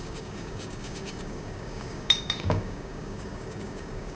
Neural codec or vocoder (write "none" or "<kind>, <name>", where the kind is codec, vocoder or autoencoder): codec, DAC